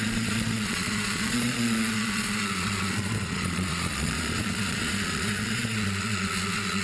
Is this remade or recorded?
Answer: remade